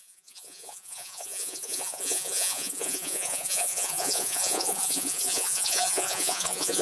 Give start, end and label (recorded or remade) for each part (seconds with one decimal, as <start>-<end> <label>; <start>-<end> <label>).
0.0-6.8 remade